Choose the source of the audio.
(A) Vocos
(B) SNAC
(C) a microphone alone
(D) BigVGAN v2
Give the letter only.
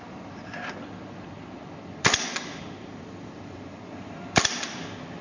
D